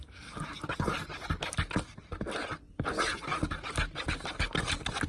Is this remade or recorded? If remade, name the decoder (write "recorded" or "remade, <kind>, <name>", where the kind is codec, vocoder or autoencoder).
recorded